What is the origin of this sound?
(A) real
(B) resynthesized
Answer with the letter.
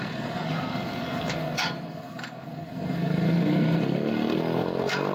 B